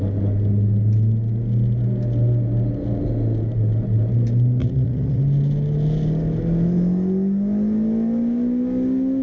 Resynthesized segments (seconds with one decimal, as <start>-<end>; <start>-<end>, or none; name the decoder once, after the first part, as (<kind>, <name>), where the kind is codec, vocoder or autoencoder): 4.6-5.2 (vocoder, Vocos)